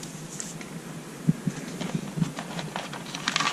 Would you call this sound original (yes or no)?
yes